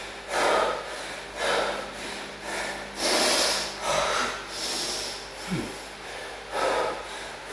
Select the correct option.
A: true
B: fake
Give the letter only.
A